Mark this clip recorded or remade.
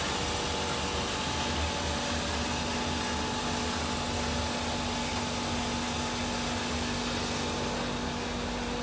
recorded